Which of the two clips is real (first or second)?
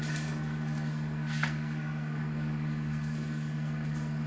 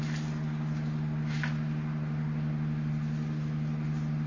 second